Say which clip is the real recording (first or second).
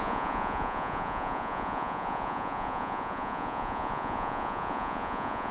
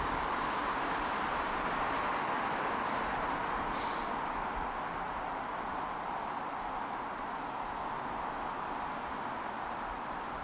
second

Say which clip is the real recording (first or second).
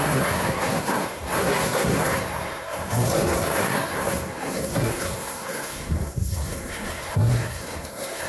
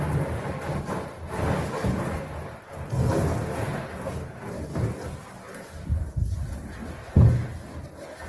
second